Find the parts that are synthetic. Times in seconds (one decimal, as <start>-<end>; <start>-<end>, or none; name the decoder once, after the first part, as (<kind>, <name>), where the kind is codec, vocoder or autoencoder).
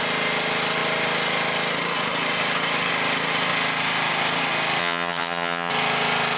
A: 4.8-5.7 (vocoder, HiFi-GAN)